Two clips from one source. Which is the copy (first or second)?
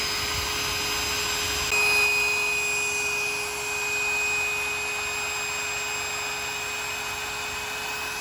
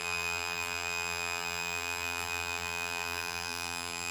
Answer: second